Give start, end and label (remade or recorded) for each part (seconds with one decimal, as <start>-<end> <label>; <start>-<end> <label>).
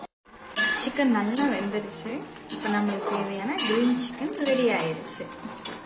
0.0-4.0 recorded; 4.0-4.5 remade; 4.5-5.9 recorded